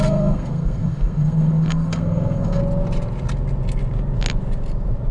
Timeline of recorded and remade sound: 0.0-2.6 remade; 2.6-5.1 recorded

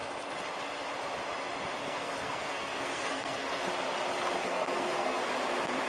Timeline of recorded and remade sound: 0.0-1.8 recorded; 1.8-3.7 remade; 3.7-4.4 recorded; 4.4-5.2 remade; 5.2-5.9 recorded

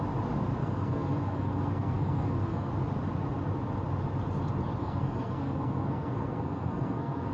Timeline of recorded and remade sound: 0.0-0.6 recorded; 0.6-2.7 remade; 2.7-4.8 recorded; 4.8-7.3 remade